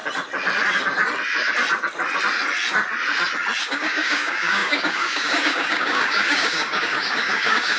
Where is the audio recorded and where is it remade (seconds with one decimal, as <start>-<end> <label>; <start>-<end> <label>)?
0.0-3.6 recorded; 3.6-7.8 remade

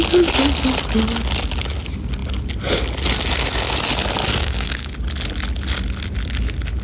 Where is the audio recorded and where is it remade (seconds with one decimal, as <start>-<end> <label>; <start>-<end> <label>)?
0.0-4.4 recorded; 4.4-4.9 remade; 4.9-6.8 recorded

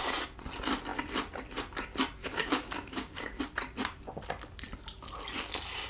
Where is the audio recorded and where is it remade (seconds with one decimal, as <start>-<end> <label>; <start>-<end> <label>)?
0.0-2.2 recorded; 2.2-3.4 remade; 3.4-5.9 recorded

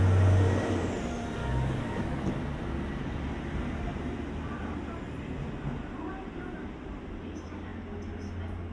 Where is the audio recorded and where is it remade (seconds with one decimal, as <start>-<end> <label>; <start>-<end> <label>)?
0.0-1.4 recorded; 1.4-2.3 remade; 2.3-8.7 recorded

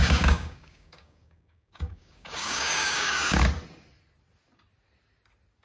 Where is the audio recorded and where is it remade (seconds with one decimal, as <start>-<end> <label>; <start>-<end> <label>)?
0.0-3.4 remade; 3.4-5.6 recorded

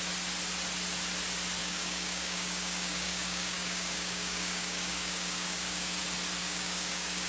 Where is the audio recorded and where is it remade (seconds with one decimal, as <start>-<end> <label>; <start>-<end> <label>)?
0.0-1.6 recorded; 1.6-6.0 remade; 6.0-6.4 recorded; 6.4-7.3 remade

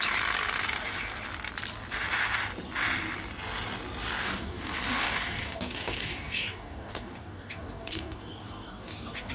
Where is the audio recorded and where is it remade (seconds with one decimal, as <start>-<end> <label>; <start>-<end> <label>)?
0.0-4.2 recorded; 4.2-9.3 remade